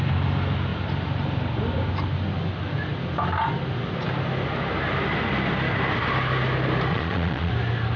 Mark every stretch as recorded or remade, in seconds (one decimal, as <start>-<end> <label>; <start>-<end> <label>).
0.0-6.9 recorded; 6.9-7.5 remade; 7.5-8.0 recorded